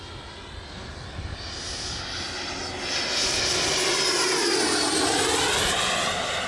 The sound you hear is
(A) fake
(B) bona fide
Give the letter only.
B